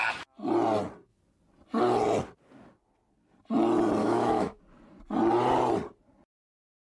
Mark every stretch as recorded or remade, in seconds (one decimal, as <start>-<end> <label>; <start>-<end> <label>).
0.0-4.0 recorded; 4.0-4.6 remade; 4.6-6.9 recorded